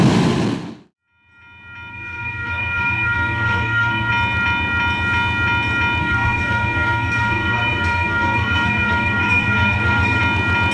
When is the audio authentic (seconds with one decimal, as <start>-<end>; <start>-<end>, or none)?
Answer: 0.0-1.9; 4.1-6.0; 10.2-10.7